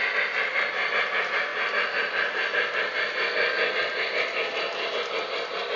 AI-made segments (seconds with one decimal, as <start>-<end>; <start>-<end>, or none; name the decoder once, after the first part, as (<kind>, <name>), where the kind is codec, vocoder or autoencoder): none